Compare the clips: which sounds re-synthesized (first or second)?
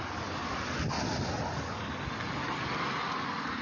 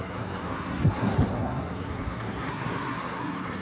second